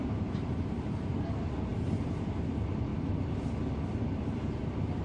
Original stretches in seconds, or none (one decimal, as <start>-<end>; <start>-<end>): 2.9-4.2